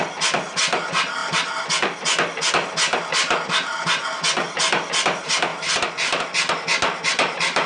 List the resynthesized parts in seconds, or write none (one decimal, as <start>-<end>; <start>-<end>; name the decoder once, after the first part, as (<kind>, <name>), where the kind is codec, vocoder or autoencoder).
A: none